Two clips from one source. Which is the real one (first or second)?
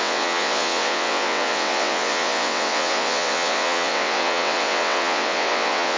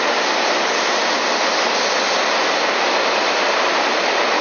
second